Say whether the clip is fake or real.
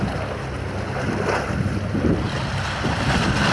real